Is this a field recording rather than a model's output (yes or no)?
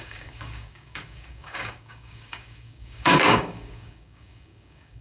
no